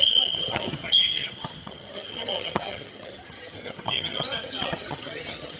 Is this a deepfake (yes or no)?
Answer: yes